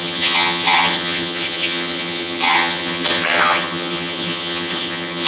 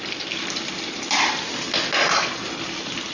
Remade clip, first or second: first